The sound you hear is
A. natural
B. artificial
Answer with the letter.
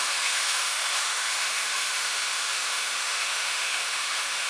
B